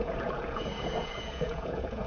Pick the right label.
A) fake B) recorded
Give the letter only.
A